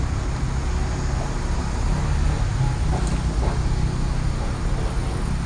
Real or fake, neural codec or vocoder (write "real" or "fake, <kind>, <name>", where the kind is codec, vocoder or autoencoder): real